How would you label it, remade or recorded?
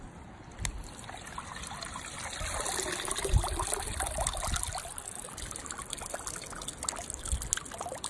recorded